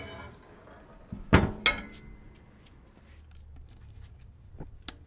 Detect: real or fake real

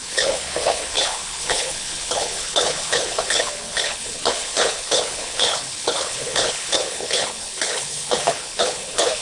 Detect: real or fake fake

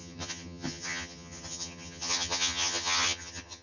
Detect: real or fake fake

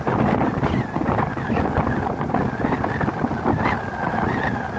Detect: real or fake real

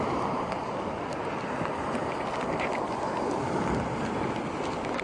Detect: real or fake real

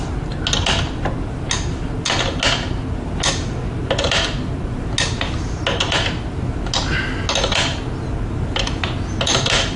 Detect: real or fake real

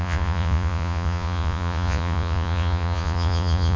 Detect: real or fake fake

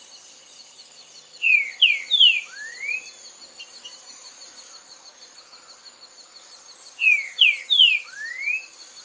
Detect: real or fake real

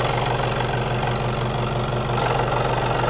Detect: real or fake real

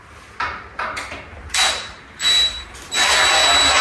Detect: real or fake real